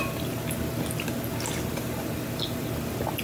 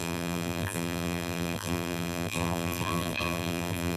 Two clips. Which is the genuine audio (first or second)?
first